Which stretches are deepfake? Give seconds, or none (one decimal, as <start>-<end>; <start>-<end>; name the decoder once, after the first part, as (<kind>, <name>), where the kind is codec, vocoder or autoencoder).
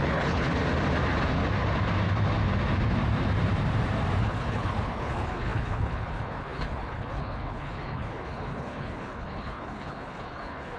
0.0-0.5 (codec, HILCodec); 4.2-10.8